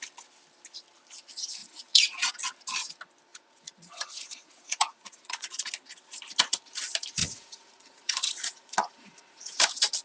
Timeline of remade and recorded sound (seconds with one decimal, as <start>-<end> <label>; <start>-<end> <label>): 0.0-1.6 recorded; 1.6-2.3 remade; 2.3-3.3 recorded; 3.3-5.7 remade; 5.7-7.2 recorded; 7.2-9.6 remade; 9.6-10.0 recorded